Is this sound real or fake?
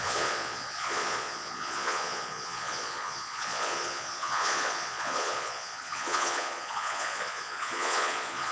fake